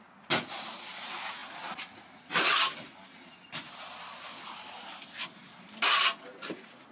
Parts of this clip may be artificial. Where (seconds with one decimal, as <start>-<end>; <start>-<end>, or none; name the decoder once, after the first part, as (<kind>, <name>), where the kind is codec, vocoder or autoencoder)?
none